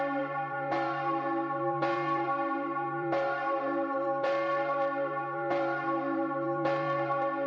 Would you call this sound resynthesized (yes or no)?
yes